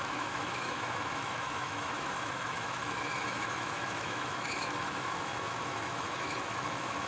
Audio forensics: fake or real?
fake